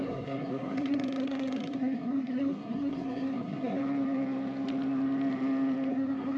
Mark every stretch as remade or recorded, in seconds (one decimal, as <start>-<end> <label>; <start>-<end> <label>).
0.0-3.8 remade; 3.8-5.9 recorded; 5.9-6.4 remade